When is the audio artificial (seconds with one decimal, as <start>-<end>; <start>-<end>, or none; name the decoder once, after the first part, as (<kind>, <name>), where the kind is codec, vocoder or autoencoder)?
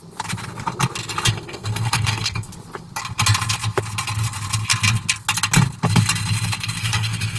1.3-2.5 (codec, SNAC); 6.8-7.4